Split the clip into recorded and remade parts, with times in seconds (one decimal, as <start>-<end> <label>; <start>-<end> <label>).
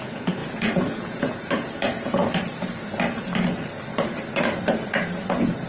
0.0-2.2 remade; 2.2-5.7 recorded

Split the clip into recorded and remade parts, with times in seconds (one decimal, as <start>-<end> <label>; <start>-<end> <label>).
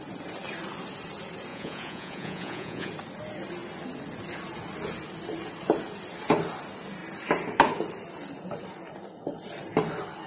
0.0-1.5 recorded; 1.5-2.9 remade; 2.9-10.3 recorded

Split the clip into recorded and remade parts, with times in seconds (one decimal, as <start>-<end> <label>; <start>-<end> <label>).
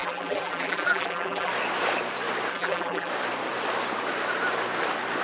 0.0-1.5 remade; 1.5-2.5 recorded; 2.5-3.1 remade; 3.1-5.2 recorded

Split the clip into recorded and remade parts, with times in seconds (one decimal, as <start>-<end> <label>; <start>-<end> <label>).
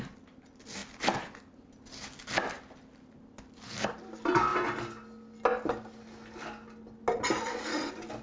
0.0-8.2 recorded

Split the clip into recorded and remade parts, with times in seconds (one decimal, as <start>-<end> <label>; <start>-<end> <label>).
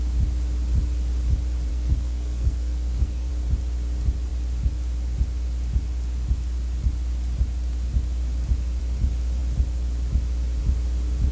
0.0-1.7 recorded; 1.7-3.3 remade; 3.3-11.3 recorded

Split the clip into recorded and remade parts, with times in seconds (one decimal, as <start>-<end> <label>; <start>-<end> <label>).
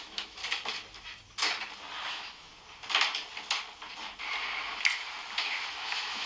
0.0-0.4 remade; 0.4-2.1 recorded; 2.1-2.5 remade; 2.5-5.7 recorded; 5.7-6.3 remade